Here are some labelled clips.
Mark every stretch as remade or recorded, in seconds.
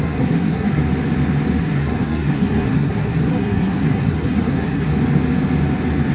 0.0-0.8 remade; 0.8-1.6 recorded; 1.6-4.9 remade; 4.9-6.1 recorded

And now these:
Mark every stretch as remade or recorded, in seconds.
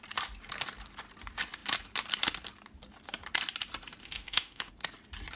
0.0-4.0 recorded; 4.0-4.7 remade; 4.7-5.4 recorded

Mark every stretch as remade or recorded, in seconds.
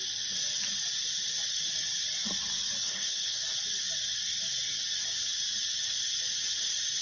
0.0-2.8 recorded; 2.8-3.4 remade; 3.4-7.0 recorded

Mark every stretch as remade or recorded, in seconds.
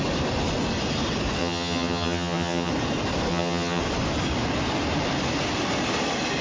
0.0-1.4 recorded; 1.4-2.7 remade; 2.7-3.3 recorded; 3.3-3.8 remade; 3.8-6.4 recorded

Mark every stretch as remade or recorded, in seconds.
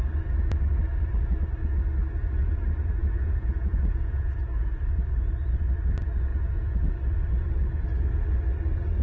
0.0-3.0 recorded; 3.0-4.3 remade; 4.3-6.3 recorded; 6.3-6.9 remade; 6.9-9.0 recorded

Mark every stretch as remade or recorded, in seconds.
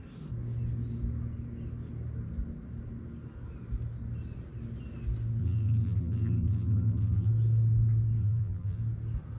0.0-5.4 recorded; 5.4-7.3 remade; 7.3-8.2 recorded; 8.2-8.8 remade; 8.8-9.4 recorded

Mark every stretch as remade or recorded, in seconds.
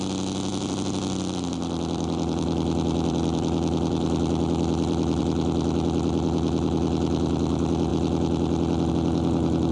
0.0-0.5 recorded; 0.5-5.2 remade; 5.2-9.7 recorded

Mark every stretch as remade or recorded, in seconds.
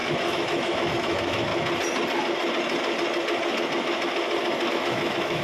0.0-1.5 remade; 1.5-4.7 recorded; 4.7-5.4 remade